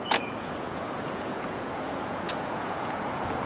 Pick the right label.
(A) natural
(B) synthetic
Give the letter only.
B